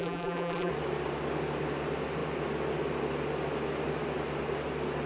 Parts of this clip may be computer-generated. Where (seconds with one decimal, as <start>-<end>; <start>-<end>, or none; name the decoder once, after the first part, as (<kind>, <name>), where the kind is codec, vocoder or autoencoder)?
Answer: 0.0-0.7 (vocoder, BigVGAN v2)